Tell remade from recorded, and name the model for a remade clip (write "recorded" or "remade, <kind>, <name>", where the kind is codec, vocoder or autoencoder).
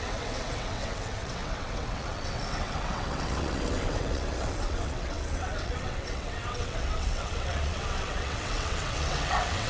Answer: remade, vocoder, WaveNeXt